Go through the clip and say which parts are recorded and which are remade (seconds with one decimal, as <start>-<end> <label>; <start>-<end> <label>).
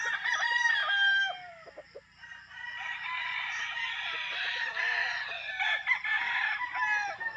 0.0-7.4 recorded